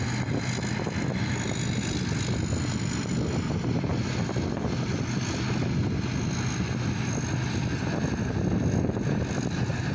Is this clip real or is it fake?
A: real